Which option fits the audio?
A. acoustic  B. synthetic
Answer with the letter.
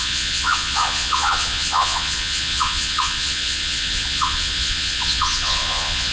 B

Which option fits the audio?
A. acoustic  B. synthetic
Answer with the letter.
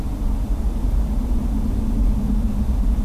A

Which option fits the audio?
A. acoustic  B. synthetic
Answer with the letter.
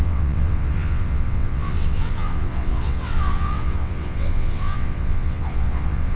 B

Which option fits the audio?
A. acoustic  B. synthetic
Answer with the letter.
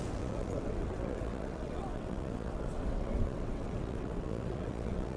B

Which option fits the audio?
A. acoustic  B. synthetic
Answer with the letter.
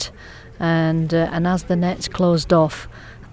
A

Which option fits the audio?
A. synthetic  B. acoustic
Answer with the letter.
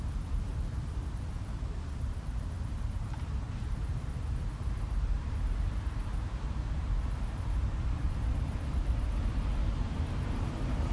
A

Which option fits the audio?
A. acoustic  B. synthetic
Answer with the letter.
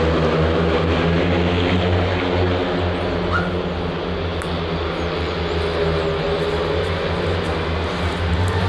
A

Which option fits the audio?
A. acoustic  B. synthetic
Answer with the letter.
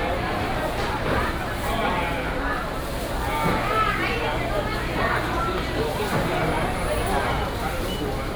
A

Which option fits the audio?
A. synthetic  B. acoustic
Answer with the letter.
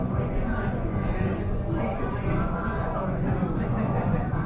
A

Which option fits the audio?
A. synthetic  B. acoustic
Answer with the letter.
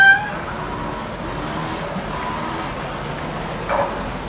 B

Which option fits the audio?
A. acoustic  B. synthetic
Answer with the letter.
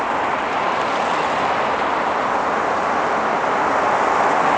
A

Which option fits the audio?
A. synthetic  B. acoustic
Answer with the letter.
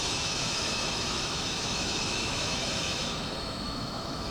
A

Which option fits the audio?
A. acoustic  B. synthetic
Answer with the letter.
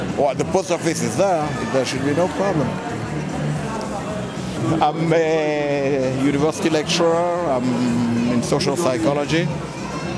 A